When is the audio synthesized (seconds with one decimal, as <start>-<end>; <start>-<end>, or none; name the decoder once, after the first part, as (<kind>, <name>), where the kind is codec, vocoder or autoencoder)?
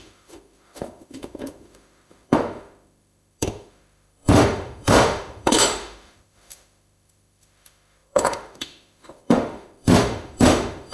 0.0-10.9 (autoencoder, DAC-VAE)